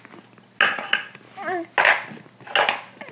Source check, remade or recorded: recorded